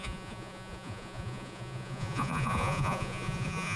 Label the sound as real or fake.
fake